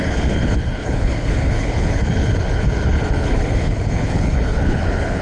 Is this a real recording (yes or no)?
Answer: no